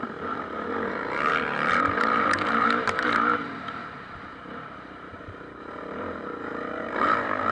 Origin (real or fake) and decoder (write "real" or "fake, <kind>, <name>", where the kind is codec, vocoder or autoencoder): fake, vocoder, BigVGAN v2